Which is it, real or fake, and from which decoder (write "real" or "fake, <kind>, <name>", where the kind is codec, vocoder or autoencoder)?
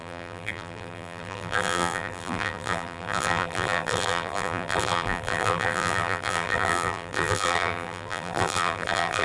fake, vocoder, BigVGAN v2